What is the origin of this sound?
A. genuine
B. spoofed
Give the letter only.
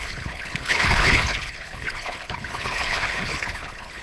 B